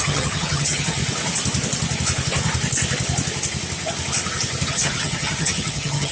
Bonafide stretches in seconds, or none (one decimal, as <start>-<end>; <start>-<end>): 1.0-4.7